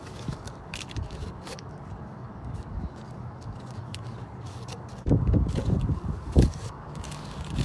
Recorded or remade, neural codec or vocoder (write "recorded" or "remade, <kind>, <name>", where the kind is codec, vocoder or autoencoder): remade, codec, DAC